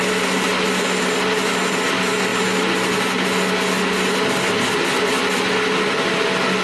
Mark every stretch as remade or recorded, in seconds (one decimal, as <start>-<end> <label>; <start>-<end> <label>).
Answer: 0.0-6.6 recorded